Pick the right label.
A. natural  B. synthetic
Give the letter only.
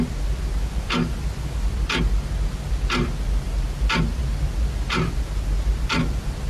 A